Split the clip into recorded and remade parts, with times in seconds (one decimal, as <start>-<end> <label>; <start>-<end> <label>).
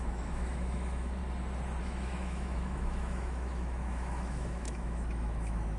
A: 0.0-1.2 remade; 1.2-1.8 recorded; 1.8-5.8 remade